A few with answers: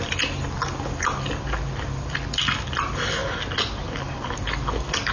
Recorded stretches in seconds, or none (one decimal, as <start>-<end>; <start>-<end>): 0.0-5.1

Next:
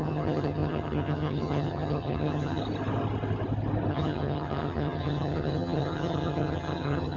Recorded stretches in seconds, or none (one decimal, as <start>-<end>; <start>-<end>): 2.6-3.9

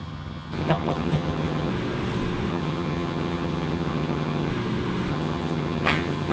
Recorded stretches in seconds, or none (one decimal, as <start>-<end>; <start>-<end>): 1.7-2.5; 4.5-5.1

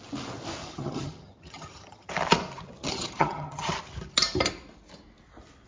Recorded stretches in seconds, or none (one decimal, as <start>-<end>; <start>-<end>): 0.0-0.6; 2.1-2.9; 3.7-5.7

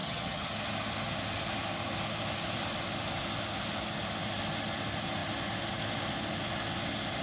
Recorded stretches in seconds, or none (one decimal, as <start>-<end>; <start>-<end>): 0.5-7.2

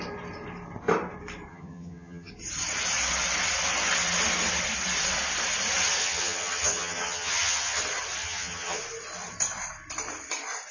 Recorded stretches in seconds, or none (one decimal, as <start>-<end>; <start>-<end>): 0.0-1.5; 2.3-6.0; 7.8-8.2; 8.8-10.7